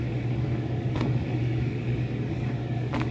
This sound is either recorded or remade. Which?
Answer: remade